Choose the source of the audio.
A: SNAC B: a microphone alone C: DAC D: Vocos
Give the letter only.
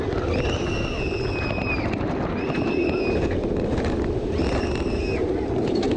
B